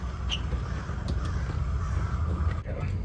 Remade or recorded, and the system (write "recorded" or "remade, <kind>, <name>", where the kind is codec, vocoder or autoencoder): recorded